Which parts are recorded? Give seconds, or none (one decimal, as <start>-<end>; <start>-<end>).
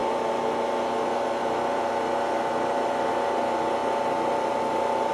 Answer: 0.0-5.1